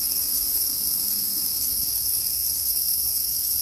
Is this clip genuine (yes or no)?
no